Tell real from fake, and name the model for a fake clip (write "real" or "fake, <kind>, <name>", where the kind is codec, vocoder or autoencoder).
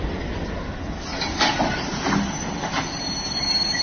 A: real